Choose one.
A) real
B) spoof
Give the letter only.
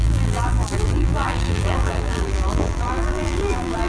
B